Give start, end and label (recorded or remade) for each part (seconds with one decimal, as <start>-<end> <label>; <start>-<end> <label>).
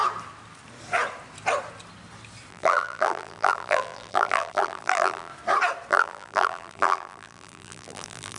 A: 0.0-2.5 recorded; 2.5-5.3 remade; 5.3-5.9 recorded; 5.9-8.4 remade